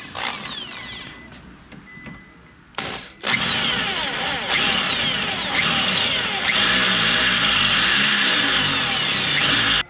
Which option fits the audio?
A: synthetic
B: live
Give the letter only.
B